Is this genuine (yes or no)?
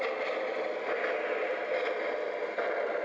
yes